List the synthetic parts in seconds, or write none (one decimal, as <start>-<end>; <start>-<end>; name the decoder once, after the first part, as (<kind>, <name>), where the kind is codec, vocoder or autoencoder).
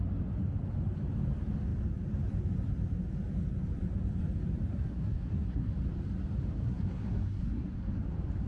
4.7-5.7 (codec, SNAC); 6.6-8.0